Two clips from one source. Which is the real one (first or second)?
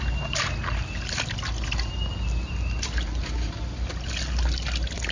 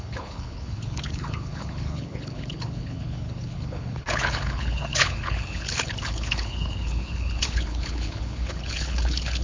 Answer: first